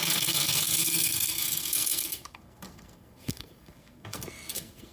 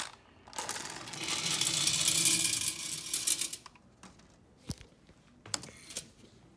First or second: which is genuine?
second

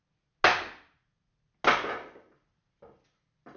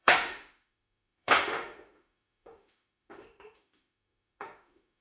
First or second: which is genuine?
first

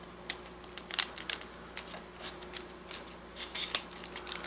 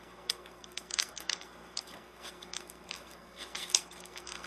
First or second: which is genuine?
first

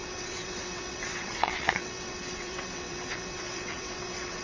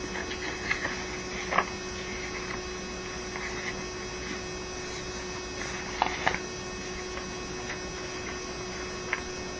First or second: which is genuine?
second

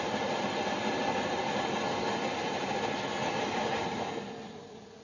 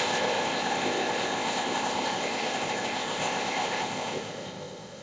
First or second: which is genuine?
first